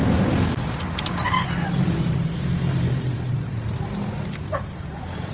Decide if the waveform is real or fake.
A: real